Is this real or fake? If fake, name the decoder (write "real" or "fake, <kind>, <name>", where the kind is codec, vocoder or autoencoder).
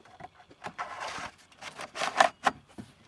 real